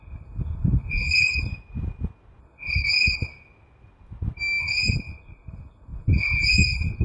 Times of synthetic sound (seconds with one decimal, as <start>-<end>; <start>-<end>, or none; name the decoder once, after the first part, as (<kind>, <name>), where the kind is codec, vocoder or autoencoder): 0.0-1.5 (codec, HILCodec); 2.4-3.3; 4.6-7.0